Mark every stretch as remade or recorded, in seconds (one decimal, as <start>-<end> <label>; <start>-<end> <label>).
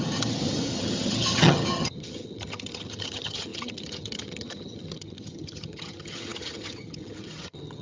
0.0-7.8 remade